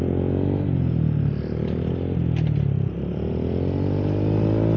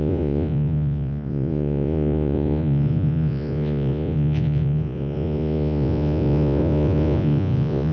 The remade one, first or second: second